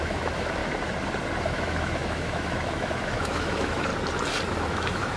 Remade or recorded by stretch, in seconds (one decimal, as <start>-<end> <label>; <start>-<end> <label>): 0.0-0.6 remade; 0.6-1.4 recorded; 1.4-3.9 remade; 3.9-4.5 recorded; 4.5-5.2 remade